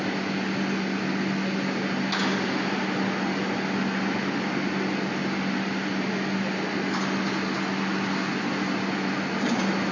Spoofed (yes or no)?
no